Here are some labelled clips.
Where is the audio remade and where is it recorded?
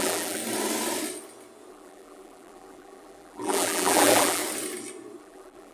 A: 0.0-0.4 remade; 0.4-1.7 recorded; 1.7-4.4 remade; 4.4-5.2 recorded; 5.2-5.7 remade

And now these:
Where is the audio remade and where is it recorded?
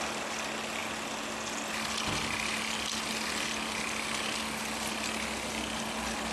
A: 0.0-6.3 recorded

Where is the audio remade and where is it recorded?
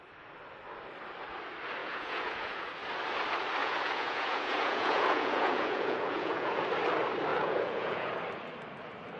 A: 0.0-1.8 recorded; 1.8-2.7 remade; 2.7-3.6 recorded; 3.6-6.6 remade; 6.6-7.3 recorded; 7.3-8.1 remade; 8.1-9.2 recorded